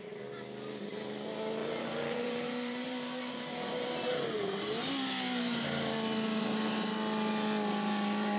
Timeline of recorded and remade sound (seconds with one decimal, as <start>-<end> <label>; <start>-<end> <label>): 0.0-1.6 recorded; 1.6-3.9 remade; 3.9-8.4 recorded